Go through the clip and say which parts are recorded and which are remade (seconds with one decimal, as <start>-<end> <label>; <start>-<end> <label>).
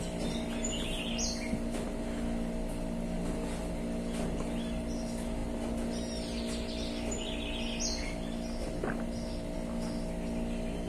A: 0.0-10.9 recorded